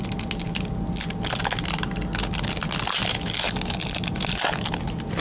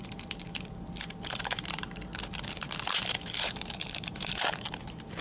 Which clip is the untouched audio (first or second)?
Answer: first